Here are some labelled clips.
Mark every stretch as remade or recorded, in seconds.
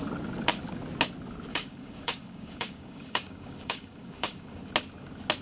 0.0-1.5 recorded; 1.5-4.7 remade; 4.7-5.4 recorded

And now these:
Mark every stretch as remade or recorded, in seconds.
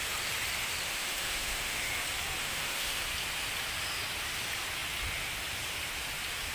0.0-0.9 recorded; 0.9-1.9 remade; 1.9-2.4 recorded; 2.4-3.0 remade; 3.0-6.5 recorded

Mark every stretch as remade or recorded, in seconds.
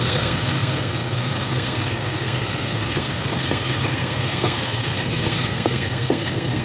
0.0-6.6 remade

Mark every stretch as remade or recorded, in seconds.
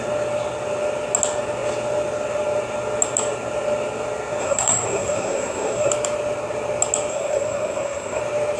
0.0-4.4 recorded; 4.4-5.9 remade; 5.9-7.1 recorded; 7.1-8.2 remade; 8.2-8.6 recorded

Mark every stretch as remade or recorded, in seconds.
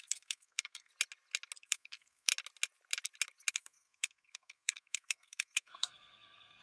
0.0-0.9 remade; 0.9-1.6 recorded; 1.6-2.3 remade; 2.3-3.5 recorded; 3.5-6.6 remade